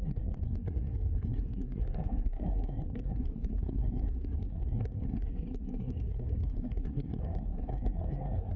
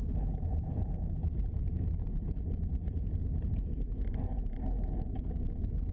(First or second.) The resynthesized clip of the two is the first